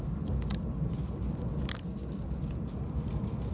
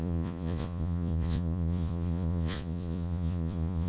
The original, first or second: first